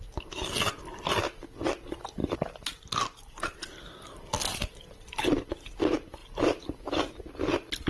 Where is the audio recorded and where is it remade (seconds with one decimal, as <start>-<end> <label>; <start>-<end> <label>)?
0.0-2.2 recorded; 2.2-5.1 remade; 5.1-7.9 recorded